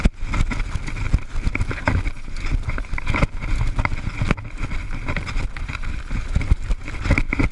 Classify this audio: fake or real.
real